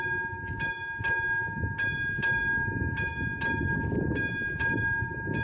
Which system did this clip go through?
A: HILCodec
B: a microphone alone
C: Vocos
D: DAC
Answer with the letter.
B